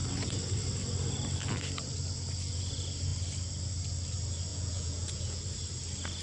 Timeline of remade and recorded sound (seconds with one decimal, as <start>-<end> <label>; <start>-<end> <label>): 0.0-4.5 recorded; 4.5-5.4 remade; 5.4-6.2 recorded